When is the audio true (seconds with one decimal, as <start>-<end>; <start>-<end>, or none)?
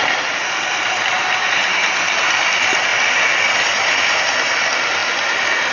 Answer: 5.0-5.7